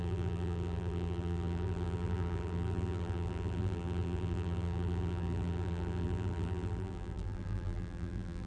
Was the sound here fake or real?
fake